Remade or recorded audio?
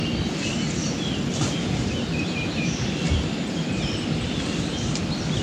recorded